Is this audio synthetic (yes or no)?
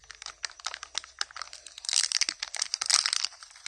no